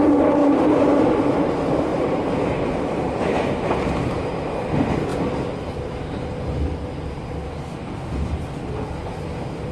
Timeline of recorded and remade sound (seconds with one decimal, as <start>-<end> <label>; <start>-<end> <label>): 0.0-0.4 recorded; 0.4-1.0 remade; 1.0-1.9 recorded; 1.9-4.2 remade; 4.2-9.7 recorded